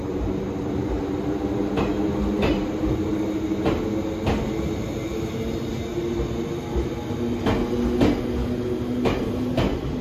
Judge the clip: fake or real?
real